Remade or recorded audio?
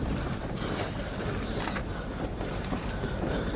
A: recorded